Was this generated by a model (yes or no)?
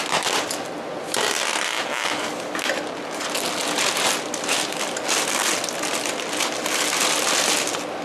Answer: no